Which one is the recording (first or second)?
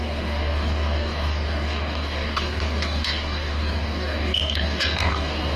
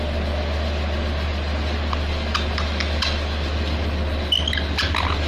second